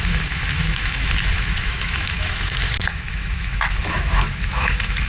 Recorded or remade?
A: remade